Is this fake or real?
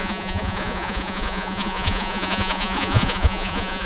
fake